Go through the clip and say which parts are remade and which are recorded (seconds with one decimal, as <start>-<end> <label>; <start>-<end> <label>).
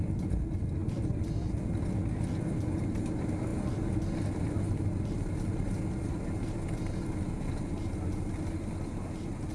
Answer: 0.0-9.5 recorded